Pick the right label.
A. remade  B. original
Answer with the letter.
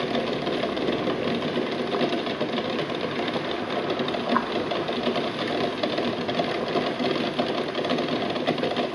B